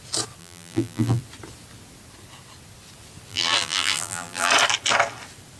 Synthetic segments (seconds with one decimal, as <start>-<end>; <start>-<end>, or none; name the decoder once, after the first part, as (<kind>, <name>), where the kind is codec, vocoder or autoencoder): 0.4-1.2 (vocoder, BigVGAN v2); 3.3-4.5